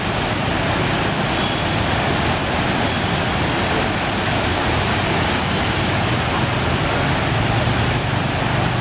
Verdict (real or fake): real